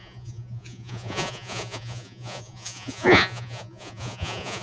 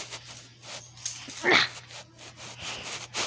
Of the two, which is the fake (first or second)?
first